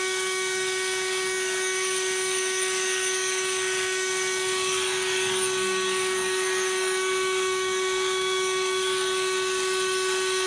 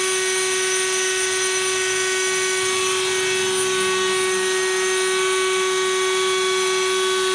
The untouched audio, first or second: second